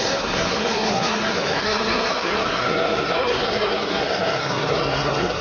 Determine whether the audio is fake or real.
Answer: fake